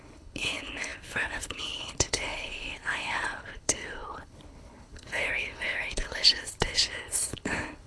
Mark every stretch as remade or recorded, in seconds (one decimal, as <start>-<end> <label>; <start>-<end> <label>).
0.0-7.9 remade